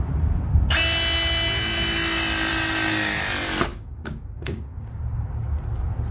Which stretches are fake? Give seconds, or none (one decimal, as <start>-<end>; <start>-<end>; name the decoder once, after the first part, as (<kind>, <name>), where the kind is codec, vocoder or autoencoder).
2.5-3.2 (codec, DAC); 3.7-5.0